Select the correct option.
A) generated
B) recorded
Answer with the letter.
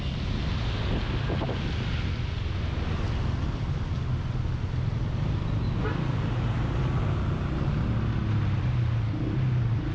B